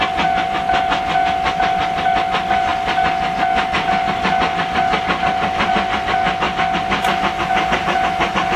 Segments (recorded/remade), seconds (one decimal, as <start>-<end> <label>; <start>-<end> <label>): 0.0-8.6 recorded